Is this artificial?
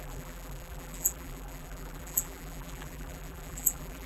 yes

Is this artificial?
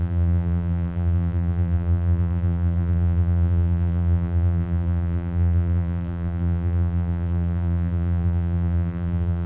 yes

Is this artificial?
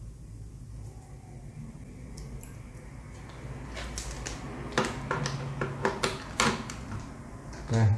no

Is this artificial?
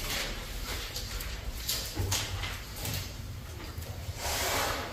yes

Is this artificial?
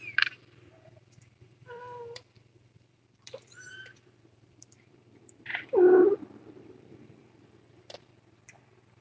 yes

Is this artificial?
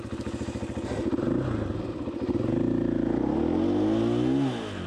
no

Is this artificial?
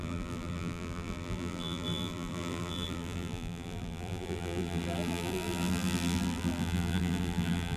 yes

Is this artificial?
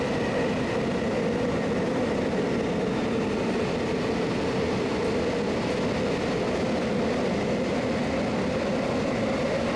no